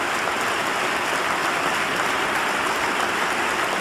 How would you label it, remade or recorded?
recorded